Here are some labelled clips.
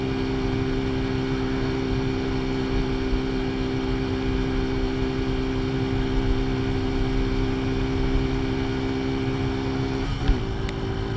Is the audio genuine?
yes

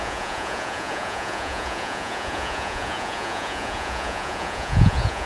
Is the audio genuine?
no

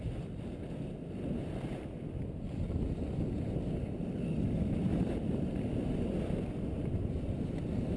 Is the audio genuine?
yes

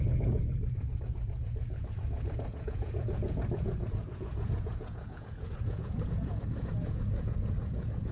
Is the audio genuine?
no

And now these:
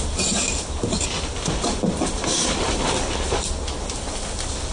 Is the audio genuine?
yes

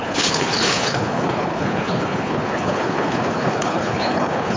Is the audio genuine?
no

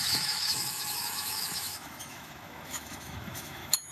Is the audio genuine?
no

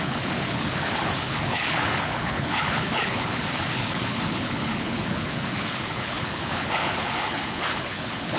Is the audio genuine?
no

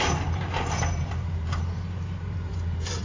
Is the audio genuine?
no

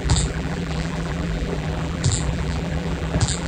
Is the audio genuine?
no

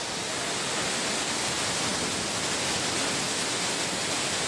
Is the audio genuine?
yes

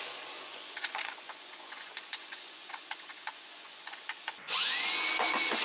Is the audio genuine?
no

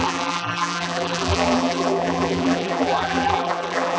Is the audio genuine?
no